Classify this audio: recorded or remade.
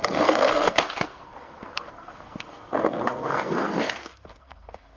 remade